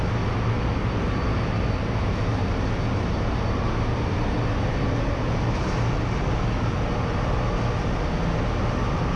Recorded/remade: recorded